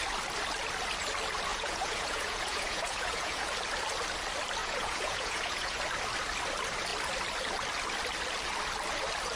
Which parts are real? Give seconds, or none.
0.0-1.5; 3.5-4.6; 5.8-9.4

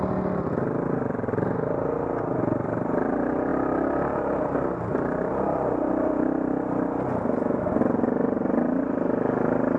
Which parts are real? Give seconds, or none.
0.0-9.8

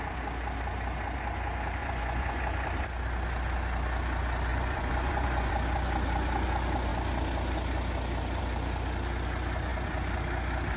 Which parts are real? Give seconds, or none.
0.0-1.8; 2.4-4.5; 5.5-10.8

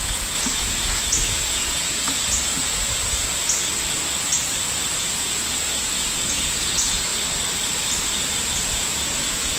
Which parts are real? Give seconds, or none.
3.4-4.9; 7.1-8.5

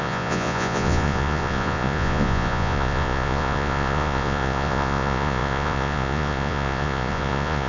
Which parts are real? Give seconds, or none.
none

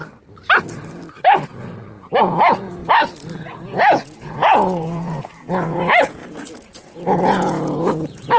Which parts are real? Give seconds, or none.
0.0-2.2; 2.8-3.4